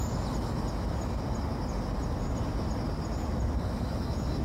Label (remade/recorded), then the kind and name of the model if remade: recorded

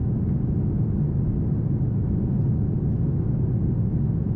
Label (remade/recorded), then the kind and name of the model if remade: recorded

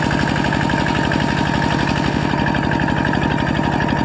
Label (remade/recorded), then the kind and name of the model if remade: recorded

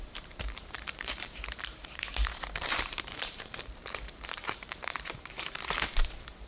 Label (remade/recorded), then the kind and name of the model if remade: remade, vocoder, BigVGAN v2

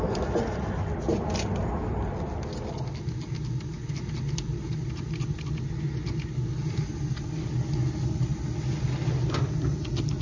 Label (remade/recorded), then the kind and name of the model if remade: recorded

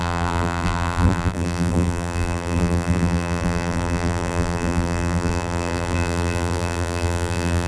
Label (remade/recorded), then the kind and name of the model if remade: remade, vocoder, BigVGAN v2